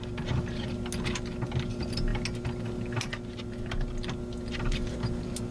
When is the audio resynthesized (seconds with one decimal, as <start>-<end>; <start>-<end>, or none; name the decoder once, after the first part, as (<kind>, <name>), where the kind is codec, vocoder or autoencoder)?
none